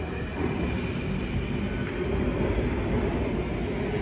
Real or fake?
real